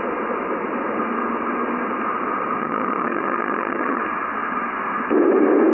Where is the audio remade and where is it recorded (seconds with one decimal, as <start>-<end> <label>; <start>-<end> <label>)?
0.0-2.6 recorded; 2.6-4.0 remade; 4.0-5.7 recorded